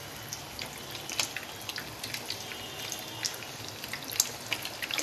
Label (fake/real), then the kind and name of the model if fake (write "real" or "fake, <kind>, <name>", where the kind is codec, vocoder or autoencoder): real